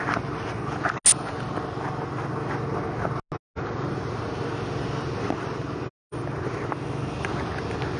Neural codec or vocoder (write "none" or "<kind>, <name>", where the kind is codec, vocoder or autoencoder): none